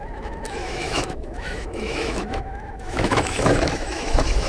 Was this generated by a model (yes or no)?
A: yes